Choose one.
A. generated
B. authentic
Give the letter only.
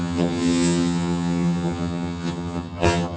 A